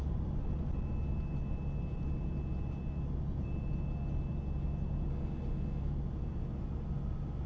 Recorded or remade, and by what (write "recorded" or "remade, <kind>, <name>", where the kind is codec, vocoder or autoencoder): recorded